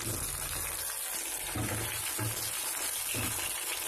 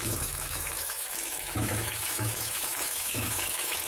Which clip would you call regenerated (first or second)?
second